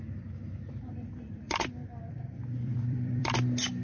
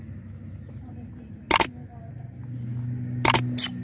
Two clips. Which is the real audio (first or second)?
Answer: second